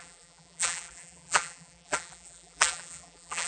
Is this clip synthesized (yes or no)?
yes